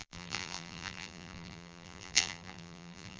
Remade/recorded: remade